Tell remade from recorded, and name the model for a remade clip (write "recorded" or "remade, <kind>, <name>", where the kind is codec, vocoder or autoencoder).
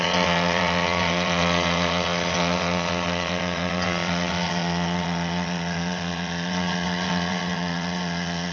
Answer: remade, vocoder, WaveNeXt